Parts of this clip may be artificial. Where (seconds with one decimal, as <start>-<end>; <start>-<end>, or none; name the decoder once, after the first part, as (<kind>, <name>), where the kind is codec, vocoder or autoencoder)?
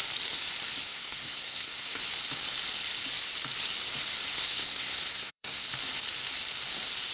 0.9-2.0 (codec, SNAC); 4.3-5.6